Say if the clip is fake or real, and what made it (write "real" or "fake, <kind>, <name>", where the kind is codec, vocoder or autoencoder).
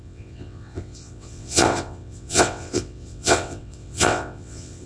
fake, vocoder, WaveNeXt